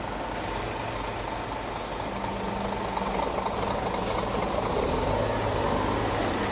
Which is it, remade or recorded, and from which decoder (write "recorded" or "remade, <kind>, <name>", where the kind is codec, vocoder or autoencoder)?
recorded